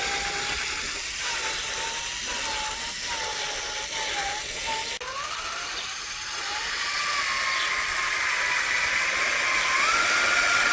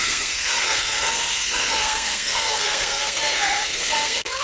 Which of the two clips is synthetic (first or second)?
second